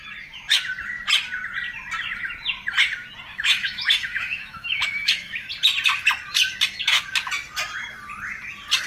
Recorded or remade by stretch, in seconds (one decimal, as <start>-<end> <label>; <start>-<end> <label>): 0.0-3.3 recorded; 3.3-5.5 remade; 5.5-8.9 recorded